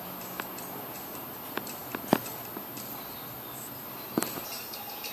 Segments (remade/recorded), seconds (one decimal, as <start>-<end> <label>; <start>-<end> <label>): 0.0-5.1 recorded